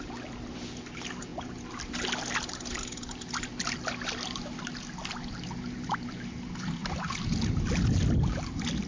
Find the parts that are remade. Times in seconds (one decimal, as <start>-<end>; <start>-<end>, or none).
none